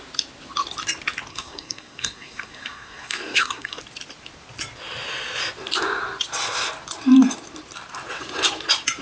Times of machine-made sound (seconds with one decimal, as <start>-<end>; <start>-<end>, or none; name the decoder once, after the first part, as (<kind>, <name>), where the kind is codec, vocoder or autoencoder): 1.3-3.8 (codec, SNAC)